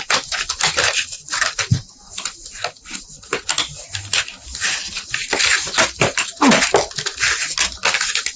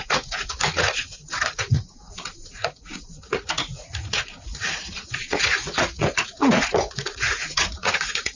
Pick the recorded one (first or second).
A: first